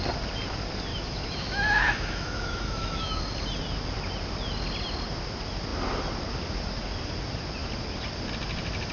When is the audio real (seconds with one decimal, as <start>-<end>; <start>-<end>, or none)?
0.0-0.9; 3.2-8.9